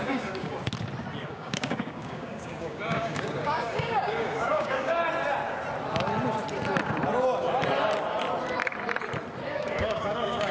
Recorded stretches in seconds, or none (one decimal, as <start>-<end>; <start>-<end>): 0.5-1.2; 5.0-9.5